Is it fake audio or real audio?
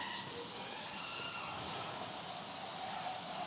real